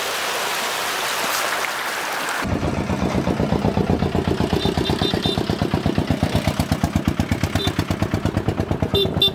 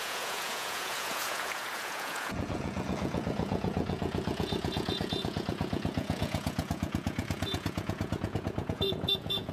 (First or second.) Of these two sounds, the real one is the first